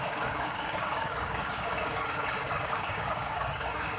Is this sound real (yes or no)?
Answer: no